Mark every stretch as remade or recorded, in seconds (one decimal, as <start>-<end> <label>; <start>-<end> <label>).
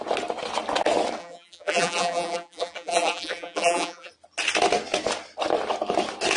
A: 0.0-1.2 recorded; 1.2-4.1 remade; 4.1-6.4 recorded